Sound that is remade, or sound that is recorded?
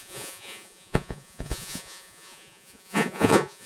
remade